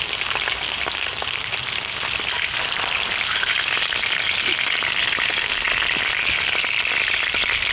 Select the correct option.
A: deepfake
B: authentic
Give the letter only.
B